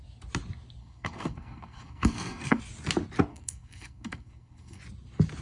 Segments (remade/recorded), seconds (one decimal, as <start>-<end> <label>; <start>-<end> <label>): 0.0-0.8 recorded; 0.8-2.6 remade; 2.6-3.3 recorded; 3.3-4.8 remade; 4.8-5.4 recorded